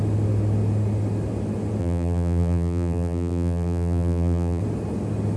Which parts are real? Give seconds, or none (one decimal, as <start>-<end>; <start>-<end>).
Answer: 0.0-1.8; 4.6-5.4